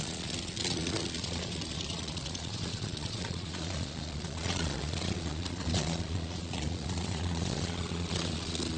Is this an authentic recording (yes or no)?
no